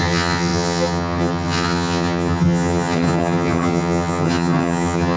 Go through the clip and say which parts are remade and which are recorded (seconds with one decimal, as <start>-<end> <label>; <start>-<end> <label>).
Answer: 0.0-5.2 remade